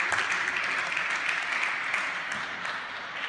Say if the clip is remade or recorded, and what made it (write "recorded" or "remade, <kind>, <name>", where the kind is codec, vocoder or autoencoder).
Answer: recorded